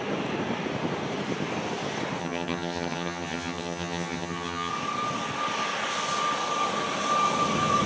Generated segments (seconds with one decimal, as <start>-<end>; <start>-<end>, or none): 2.2-4.7